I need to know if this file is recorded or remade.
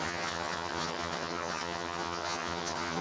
remade